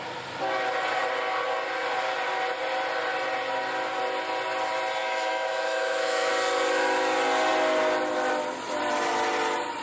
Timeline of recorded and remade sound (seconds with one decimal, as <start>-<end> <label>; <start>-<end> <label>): 0.0-5.0 recorded; 5.0-6.3 remade; 6.3-9.8 recorded